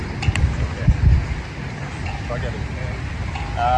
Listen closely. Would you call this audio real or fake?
real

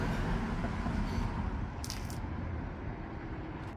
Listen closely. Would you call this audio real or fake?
real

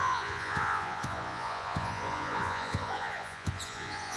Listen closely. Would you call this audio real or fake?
fake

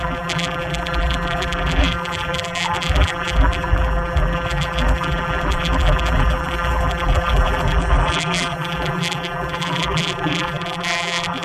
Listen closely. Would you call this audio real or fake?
fake